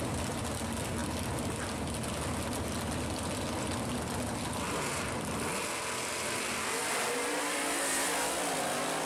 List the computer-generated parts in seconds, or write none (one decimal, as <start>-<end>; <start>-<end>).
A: none